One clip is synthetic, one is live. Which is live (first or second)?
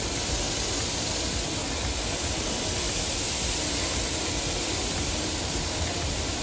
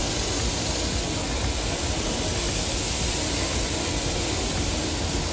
second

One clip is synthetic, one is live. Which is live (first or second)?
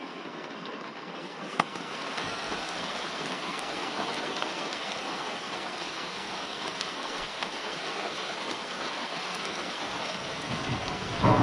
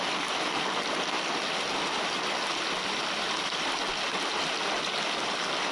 second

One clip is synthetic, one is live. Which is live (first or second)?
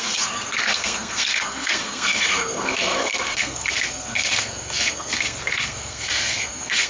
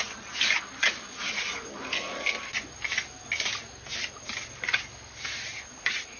second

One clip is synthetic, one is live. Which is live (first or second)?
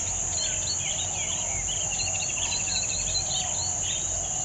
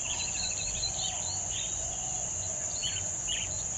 first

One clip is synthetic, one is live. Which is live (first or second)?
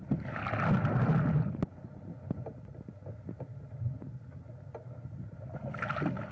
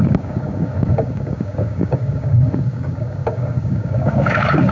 first